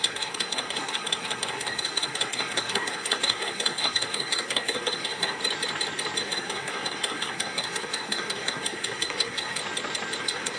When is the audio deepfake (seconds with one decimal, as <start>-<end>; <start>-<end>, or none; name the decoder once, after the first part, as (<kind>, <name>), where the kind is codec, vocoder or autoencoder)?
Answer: 0.0-5.4 (codec, SNAC); 6.2-9.6; 10.2-10.6